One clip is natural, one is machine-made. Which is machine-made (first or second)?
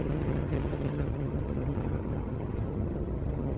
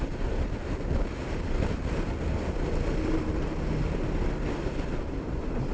first